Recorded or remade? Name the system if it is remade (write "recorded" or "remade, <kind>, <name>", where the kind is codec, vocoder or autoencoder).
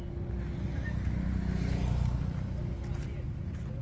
recorded